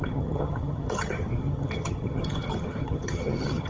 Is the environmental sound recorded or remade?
remade